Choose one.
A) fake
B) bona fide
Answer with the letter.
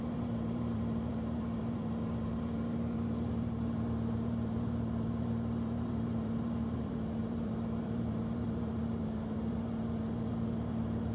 A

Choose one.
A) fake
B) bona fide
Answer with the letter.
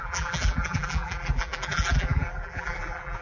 A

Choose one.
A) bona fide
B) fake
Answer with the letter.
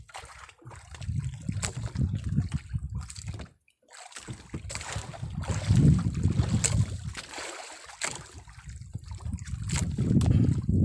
A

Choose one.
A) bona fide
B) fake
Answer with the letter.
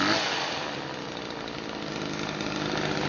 A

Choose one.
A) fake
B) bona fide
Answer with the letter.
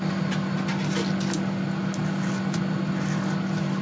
B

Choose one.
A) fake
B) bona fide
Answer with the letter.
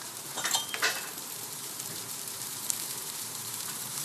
A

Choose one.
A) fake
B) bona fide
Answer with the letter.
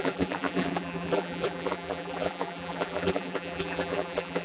A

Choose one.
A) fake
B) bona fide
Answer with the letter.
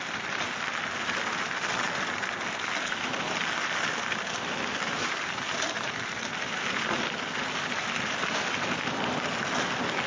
A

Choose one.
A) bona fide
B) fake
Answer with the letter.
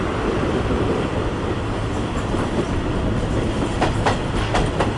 B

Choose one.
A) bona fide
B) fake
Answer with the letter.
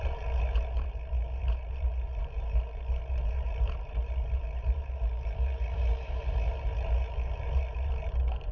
B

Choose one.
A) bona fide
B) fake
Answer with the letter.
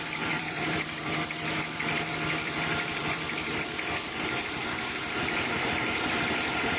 B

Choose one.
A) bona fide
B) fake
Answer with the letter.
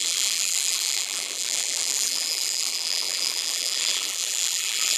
B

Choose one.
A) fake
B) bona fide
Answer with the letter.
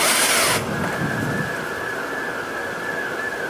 B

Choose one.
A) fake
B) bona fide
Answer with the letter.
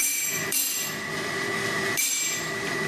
A